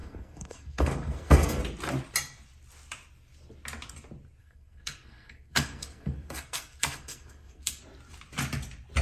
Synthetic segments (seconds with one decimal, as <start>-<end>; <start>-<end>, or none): 0.0-1.6; 4.4-7.8